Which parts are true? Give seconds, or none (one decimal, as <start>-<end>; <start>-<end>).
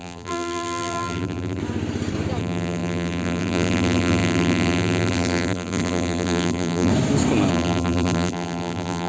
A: 1.6-2.4; 6.9-7.5